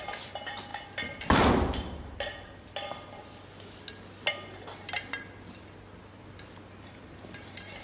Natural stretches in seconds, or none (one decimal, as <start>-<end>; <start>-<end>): 0.0-7.8